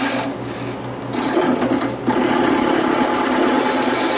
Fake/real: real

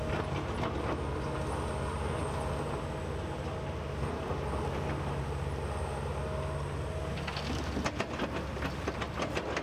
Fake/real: real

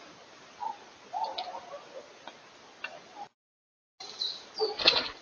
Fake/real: real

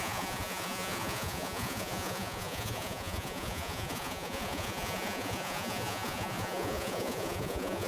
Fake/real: fake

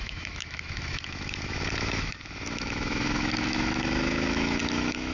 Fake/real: fake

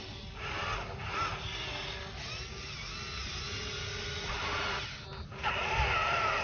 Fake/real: real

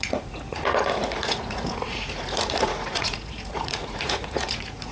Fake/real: fake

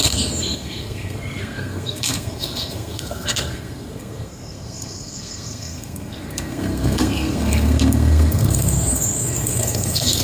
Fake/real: fake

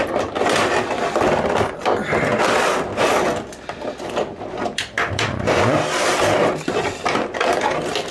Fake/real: real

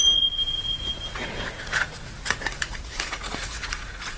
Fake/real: fake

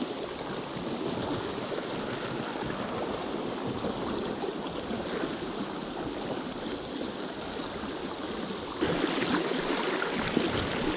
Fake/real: real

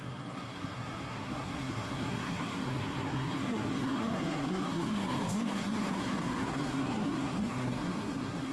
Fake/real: fake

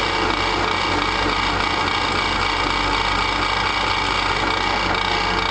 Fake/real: real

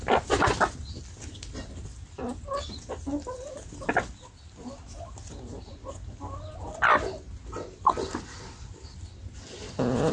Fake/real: real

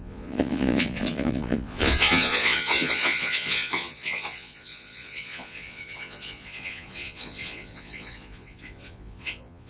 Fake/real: fake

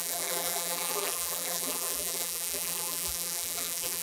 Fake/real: fake